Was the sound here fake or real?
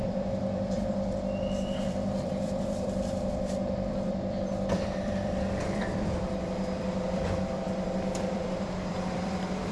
fake